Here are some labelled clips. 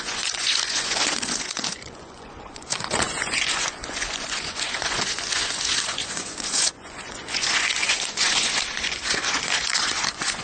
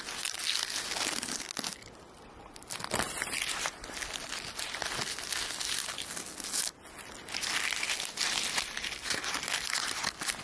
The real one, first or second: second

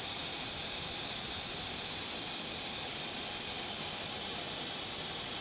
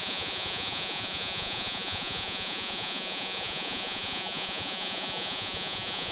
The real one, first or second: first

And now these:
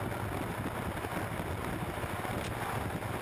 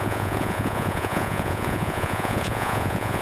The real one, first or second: first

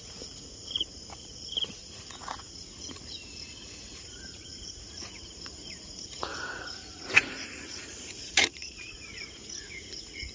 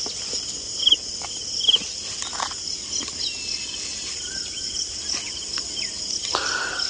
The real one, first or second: second